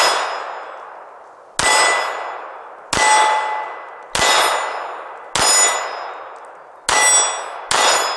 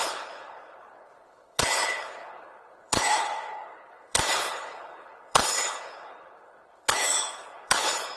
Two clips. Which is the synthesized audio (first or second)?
second